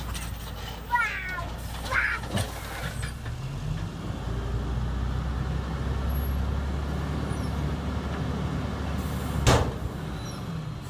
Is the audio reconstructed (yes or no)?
no